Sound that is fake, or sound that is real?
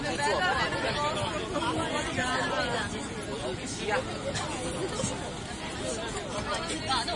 real